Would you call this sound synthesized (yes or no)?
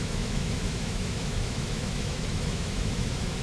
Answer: yes